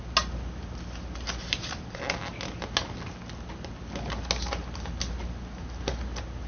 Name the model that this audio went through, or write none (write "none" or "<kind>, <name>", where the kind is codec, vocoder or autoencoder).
none